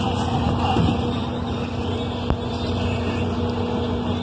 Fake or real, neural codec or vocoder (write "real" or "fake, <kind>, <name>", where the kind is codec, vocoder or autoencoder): real